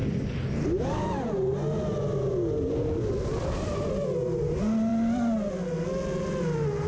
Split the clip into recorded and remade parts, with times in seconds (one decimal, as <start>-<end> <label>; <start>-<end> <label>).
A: 0.0-6.9 recorded